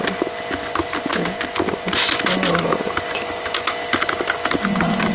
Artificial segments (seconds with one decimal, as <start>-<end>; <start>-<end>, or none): none